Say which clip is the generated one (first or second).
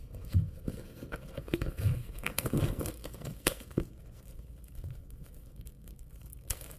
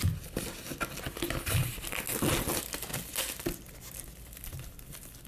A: first